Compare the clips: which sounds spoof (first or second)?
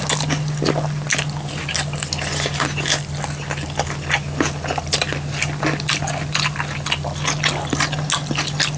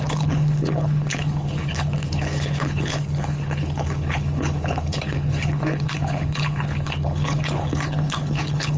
second